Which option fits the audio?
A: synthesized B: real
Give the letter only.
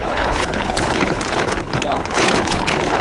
A